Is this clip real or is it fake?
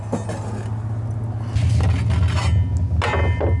real